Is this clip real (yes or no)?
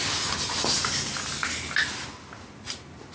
yes